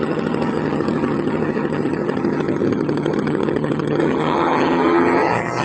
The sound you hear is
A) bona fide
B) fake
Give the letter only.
B